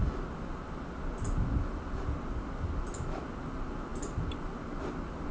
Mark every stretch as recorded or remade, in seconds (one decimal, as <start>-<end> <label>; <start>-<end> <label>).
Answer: 0.0-5.3 recorded